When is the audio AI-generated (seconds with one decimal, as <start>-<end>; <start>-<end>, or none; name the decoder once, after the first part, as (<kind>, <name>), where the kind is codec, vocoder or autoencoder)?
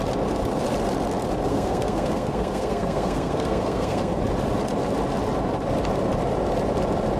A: 1.5-4.2 (codec, SNAC)